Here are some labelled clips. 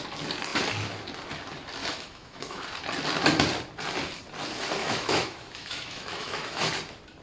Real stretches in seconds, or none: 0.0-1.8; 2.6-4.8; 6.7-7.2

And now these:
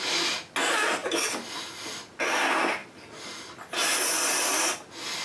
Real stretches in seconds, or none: 0.0-5.2